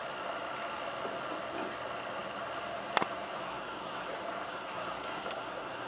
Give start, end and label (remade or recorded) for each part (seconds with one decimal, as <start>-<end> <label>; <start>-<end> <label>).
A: 0.0-3.4 recorded; 3.4-4.1 remade; 4.1-4.5 recorded; 4.5-5.9 remade